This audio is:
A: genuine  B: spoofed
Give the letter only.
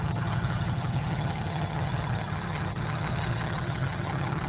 B